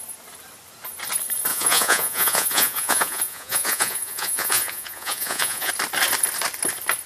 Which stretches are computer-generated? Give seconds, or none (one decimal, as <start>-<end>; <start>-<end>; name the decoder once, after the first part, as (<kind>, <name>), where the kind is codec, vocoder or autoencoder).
1.5-5.7 (vocoder, Vocos)